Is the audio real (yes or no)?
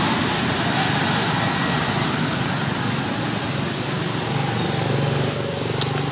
yes